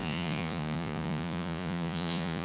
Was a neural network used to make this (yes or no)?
yes